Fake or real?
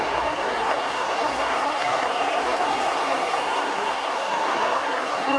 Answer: fake